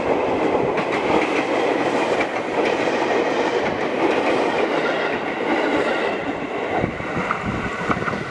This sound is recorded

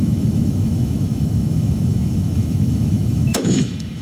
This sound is remade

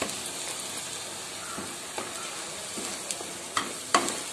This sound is recorded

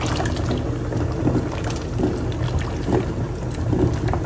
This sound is recorded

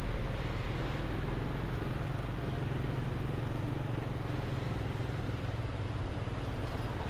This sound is recorded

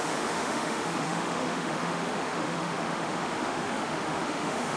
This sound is remade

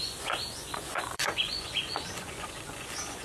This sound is remade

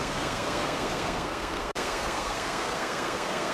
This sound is remade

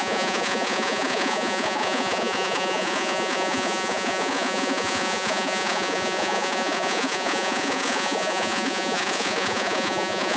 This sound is remade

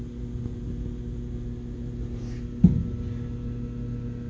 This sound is recorded